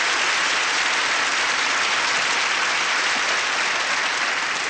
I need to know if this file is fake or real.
real